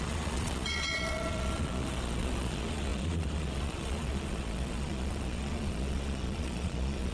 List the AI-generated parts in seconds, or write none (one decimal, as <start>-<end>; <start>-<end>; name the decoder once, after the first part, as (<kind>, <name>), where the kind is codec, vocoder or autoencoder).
0.0-7.1 (vocoder, Vocos)